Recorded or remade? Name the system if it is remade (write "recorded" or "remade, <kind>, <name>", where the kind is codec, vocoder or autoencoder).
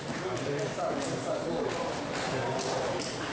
remade, vocoder, BigVGAN v2